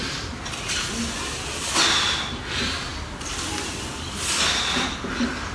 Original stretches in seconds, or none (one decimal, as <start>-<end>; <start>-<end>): 0.0-5.5